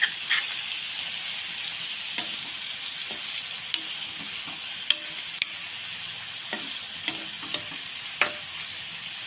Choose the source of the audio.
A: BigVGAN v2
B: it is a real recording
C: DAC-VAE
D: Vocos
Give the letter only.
B